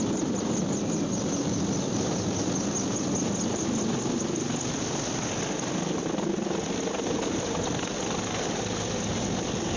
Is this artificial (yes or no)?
no